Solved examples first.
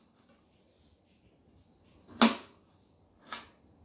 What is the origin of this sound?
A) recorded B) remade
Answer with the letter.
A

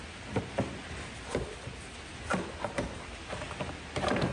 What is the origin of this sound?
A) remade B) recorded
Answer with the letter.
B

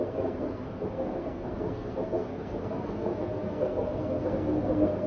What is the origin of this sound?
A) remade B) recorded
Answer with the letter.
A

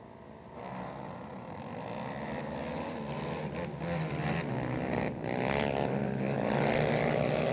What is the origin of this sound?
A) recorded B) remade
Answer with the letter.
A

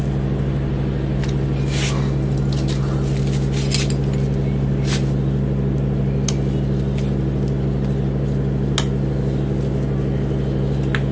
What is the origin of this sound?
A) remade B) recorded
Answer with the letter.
B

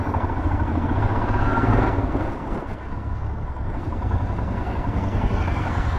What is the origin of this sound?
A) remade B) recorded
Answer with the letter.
A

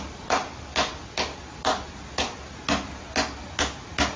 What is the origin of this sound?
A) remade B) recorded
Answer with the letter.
B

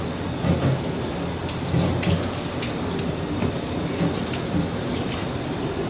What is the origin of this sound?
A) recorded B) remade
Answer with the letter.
A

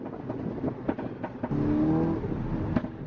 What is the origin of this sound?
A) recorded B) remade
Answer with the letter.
A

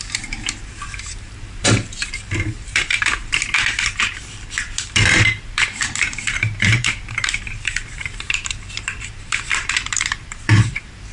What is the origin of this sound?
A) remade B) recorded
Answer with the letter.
A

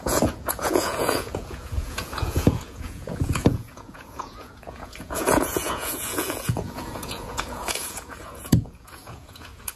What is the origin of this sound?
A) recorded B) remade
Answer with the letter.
B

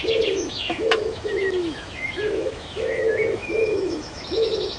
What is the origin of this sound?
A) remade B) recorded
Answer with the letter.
A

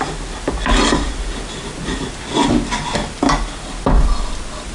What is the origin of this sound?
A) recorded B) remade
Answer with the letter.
A